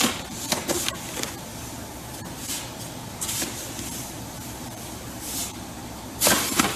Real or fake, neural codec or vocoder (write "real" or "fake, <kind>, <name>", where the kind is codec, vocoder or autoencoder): fake, vocoder, BigVGAN v2